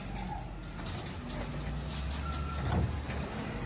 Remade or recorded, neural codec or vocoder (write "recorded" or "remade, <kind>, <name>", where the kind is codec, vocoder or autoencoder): recorded